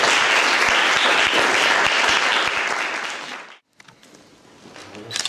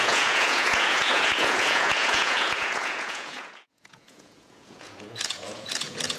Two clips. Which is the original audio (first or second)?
first